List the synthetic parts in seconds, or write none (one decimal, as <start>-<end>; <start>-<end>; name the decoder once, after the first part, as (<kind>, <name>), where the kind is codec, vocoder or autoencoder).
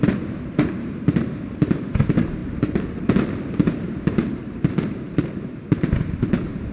0.0-6.7 (vocoder, BigVGAN v2)